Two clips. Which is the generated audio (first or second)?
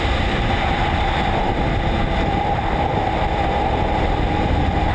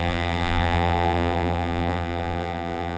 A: second